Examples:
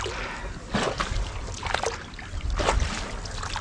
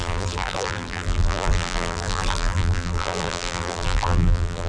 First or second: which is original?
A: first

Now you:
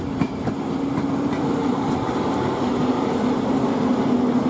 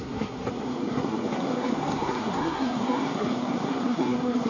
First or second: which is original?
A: first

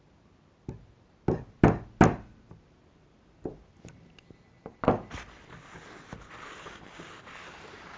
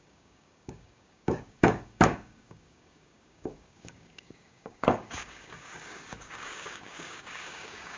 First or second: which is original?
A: first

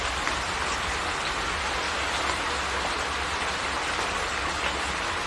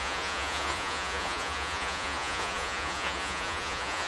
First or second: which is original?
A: first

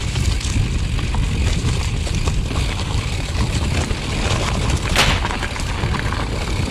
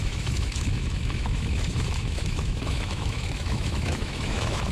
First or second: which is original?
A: first